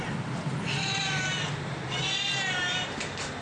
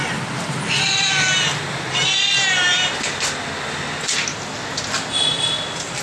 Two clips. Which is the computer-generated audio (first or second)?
first